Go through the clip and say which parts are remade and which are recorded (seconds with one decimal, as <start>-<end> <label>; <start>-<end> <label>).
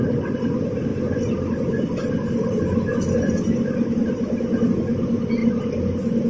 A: 0.0-6.3 recorded